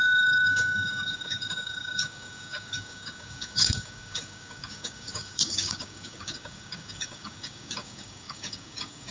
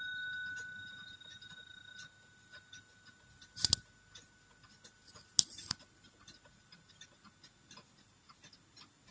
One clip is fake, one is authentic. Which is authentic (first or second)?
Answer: second